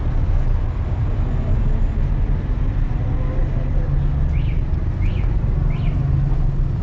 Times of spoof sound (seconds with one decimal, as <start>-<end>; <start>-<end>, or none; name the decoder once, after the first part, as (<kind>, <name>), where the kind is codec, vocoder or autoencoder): none